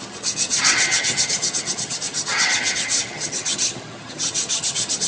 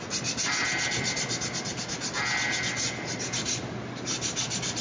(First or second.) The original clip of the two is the second